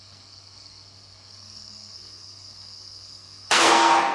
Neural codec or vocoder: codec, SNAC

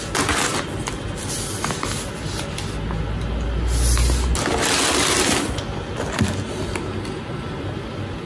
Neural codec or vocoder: none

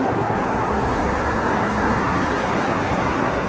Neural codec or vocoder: codec, SNAC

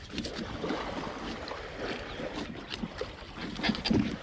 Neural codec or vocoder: none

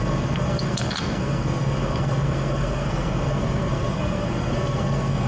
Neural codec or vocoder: codec, SNAC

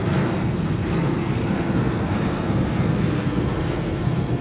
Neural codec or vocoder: codec, SNAC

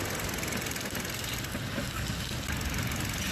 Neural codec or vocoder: none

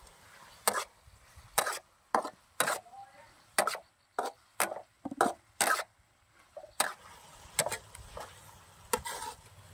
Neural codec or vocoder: none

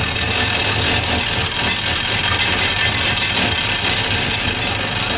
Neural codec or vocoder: none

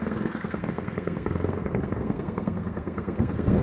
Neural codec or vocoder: codec, SNAC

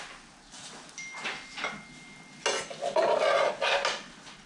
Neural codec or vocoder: none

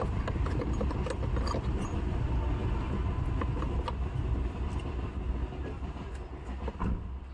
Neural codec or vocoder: none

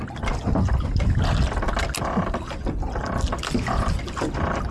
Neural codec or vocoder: none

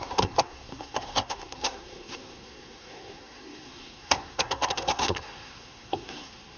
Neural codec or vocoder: codec, SNAC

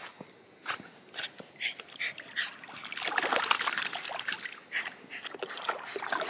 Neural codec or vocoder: none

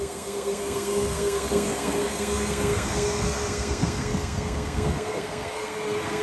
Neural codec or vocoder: codec, SNAC